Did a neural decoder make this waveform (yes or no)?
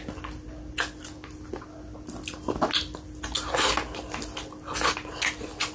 no